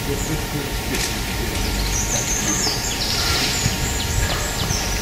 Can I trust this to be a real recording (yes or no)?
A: no